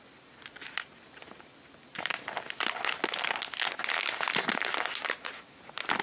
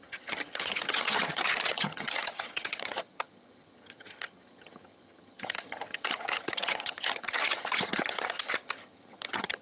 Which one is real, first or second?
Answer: first